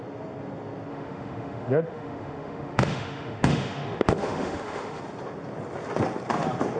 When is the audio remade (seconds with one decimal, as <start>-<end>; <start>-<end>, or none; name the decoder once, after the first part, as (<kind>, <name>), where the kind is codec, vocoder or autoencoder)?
0.9-5.0 (autoencoder, DAC-VAE)